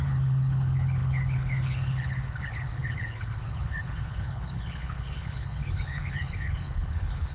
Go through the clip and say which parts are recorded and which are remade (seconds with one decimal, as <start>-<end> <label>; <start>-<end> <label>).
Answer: 0.0-7.3 remade